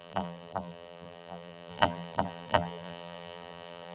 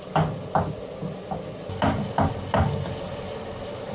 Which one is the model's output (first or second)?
first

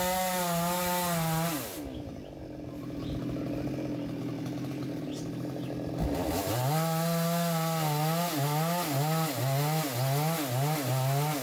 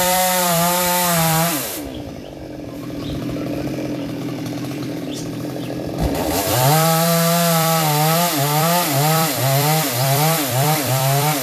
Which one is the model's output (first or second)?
second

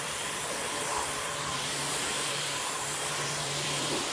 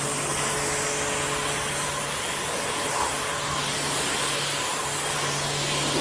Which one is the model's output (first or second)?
first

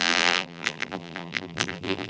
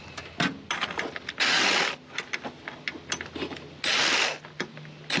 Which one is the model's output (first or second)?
first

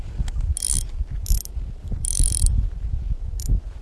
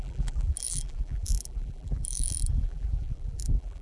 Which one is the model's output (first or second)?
second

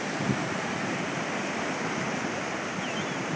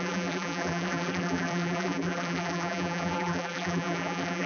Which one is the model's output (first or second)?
second